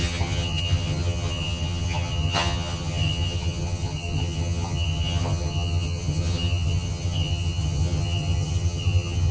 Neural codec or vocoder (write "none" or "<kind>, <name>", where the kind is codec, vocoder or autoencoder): vocoder, HiFi-GAN